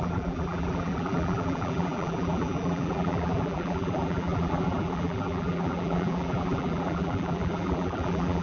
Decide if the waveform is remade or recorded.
remade